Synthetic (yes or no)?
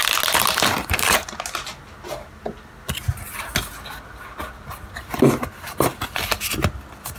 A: no